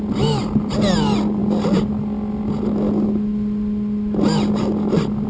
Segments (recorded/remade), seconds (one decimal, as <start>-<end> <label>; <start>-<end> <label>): 0.0-5.3 recorded